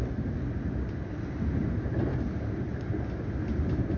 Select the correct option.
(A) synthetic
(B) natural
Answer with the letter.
B